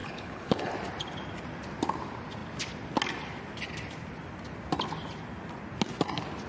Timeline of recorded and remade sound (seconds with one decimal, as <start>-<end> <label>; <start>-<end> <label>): 0.0-0.7 remade; 0.7-6.5 recorded